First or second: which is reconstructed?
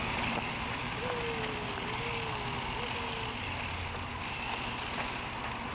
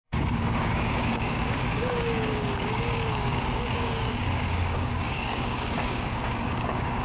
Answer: second